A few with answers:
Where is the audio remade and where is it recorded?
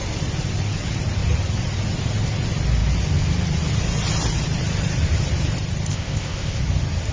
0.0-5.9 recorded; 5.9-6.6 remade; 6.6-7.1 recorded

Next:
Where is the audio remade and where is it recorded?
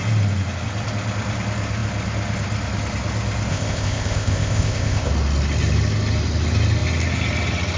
0.0-3.5 recorded; 3.5-5.1 remade; 5.1-7.8 recorded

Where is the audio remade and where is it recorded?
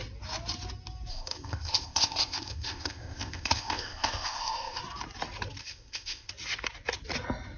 0.0-1.1 recorded; 1.1-4.8 remade; 4.8-5.6 recorded; 5.6-6.3 remade; 6.3-7.6 recorded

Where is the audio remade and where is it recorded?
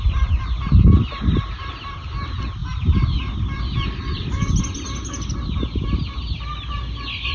0.0-7.3 recorded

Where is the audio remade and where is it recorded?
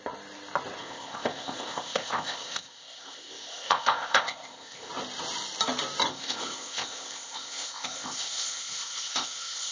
0.0-0.8 recorded; 0.8-4.9 remade; 4.9-6.1 recorded; 6.1-9.7 remade